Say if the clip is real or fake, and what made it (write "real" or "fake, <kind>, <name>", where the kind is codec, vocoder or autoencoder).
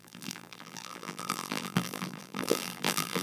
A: fake, vocoder, BigVGAN v2